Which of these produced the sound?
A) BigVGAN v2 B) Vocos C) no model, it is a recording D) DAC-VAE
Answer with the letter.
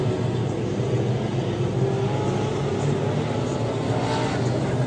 C